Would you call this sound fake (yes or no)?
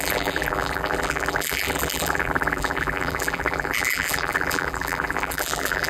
yes